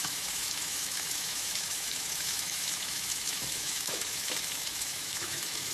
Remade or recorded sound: remade